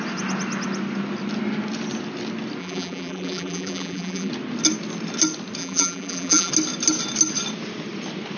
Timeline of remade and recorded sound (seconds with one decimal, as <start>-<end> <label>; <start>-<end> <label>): 0.0-2.6 recorded; 2.6-4.3 remade; 4.3-5.6 recorded; 5.6-6.5 remade; 6.5-8.4 recorded